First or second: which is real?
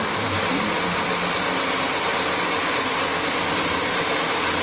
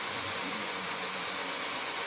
first